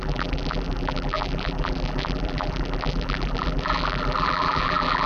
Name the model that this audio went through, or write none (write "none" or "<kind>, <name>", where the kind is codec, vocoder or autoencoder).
vocoder, BigVGAN v2